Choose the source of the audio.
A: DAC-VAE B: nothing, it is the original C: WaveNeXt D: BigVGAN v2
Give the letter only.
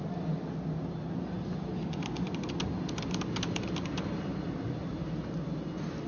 B